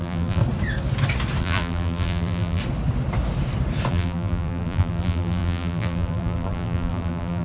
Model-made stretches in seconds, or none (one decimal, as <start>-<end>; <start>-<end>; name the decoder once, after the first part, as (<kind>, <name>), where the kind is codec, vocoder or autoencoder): 0.0-0.4 (vocoder, BigVGAN v2); 1.4-2.6; 3.9-7.4

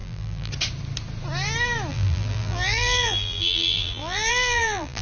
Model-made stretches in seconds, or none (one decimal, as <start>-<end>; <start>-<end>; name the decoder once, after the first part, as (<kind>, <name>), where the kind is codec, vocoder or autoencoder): 0.0-0.5 (vocoder, BigVGAN v2); 1.9-5.0

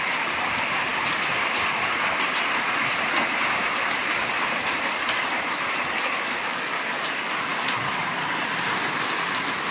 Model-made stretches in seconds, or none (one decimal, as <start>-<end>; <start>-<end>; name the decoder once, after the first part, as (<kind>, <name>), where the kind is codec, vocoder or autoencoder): 4.0-5.5 (vocoder, BigVGAN v2); 7.5-8.1